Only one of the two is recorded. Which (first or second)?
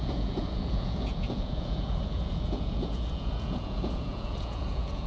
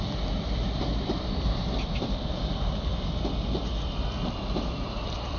second